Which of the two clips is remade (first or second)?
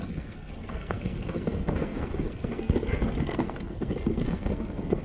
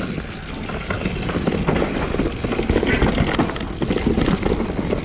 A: first